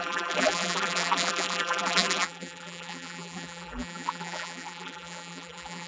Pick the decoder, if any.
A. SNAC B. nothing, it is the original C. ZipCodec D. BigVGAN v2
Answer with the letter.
D